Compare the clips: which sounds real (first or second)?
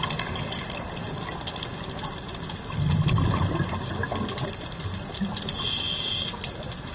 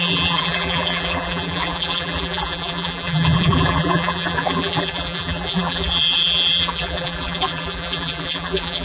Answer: first